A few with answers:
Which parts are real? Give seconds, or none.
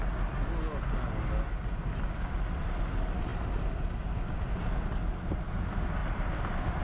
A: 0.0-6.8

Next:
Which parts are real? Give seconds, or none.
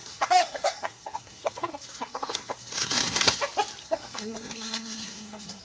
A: 3.4-3.8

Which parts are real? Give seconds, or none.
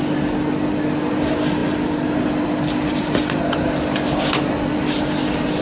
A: 0.0-5.6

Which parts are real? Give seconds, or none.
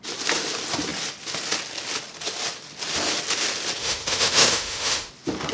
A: 0.0-3.8; 5.1-5.5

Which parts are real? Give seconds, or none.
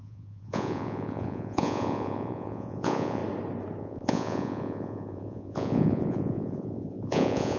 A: 3.2-3.8